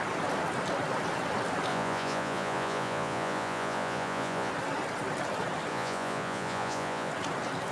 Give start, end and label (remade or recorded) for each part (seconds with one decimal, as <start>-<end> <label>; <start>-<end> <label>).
0.0-1.7 recorded; 1.7-4.5 remade; 4.5-5.7 recorded; 5.7-7.1 remade; 7.1-7.7 recorded